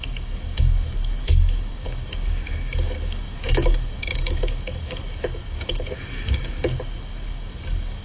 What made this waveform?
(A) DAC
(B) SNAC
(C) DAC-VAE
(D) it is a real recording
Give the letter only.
A